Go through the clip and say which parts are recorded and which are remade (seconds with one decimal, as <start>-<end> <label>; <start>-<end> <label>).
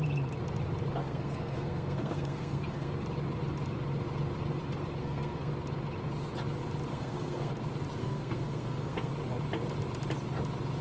0.0-1.0 recorded; 1.0-2.9 remade; 2.9-5.0 recorded; 5.0-5.5 remade; 5.5-6.9 recorded; 6.9-7.5 remade; 7.5-8.0 recorded; 8.0-9.1 remade; 9.1-10.8 recorded